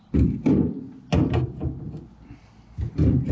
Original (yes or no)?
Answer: yes